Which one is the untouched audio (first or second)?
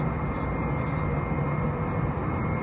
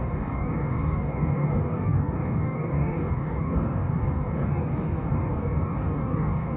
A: first